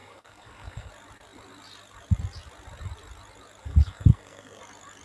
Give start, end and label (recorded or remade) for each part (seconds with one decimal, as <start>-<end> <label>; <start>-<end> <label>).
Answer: 0.0-0.9 remade; 0.9-3.6 recorded; 3.6-4.6 remade; 4.6-5.0 recorded